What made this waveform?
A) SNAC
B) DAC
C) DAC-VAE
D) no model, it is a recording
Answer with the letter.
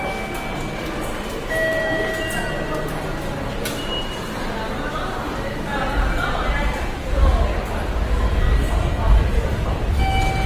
D